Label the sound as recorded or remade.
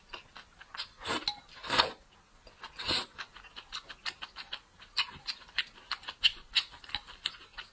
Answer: recorded